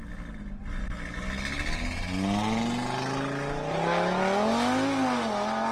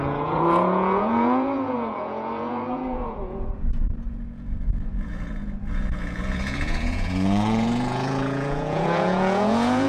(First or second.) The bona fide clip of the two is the first